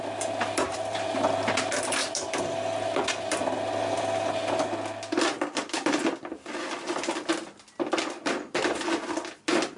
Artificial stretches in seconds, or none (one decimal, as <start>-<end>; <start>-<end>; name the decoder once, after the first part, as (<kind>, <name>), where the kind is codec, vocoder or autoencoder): none